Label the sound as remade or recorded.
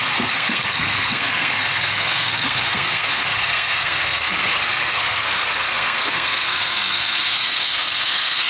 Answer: remade